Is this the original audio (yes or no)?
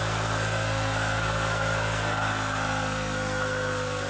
no